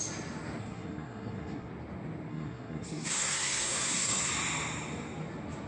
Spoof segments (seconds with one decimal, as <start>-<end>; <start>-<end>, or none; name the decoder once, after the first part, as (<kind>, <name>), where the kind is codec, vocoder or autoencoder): 0.6-1.7 (codec, SNAC); 2.3-4.3